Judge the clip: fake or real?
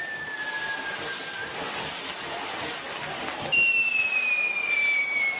real